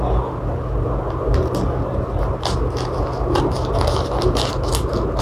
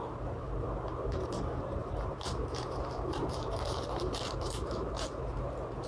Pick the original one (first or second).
first